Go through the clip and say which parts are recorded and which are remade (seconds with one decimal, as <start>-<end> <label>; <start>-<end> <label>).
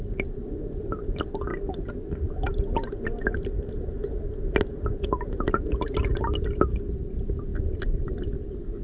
0.0-7.5 recorded; 7.5-8.1 remade; 8.1-8.8 recorded